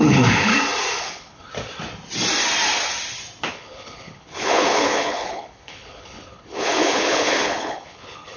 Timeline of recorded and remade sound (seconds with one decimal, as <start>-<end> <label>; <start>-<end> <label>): 0.0-0.5 remade; 0.5-1.0 recorded; 1.0-1.5 remade; 1.5-3.5 recorded; 3.5-8.4 remade